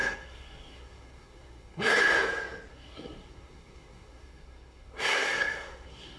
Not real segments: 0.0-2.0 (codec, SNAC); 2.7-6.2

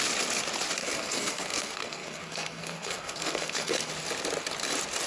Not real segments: 0.8-3.9 (codec, SNAC)

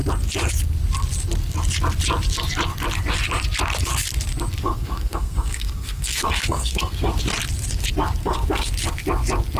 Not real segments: 4.6-7.1 (codec, SNAC); 8.2-8.7